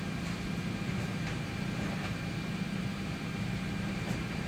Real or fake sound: fake